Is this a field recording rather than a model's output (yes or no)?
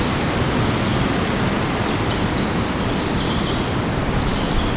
yes